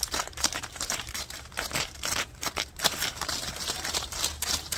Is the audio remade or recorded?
remade